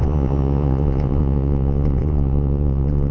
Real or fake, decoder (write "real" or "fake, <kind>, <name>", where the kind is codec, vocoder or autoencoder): fake, vocoder, Vocos